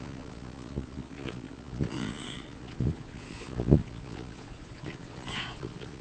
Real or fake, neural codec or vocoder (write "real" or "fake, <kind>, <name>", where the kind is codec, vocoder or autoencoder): fake, vocoder, Vocos